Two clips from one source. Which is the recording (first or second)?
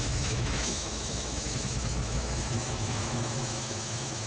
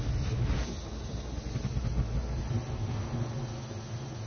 second